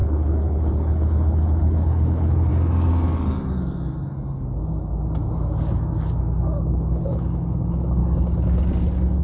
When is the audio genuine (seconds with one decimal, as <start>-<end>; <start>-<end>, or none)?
2.5-6.7; 8.0-9.2